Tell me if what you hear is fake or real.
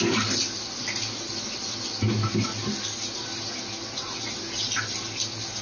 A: real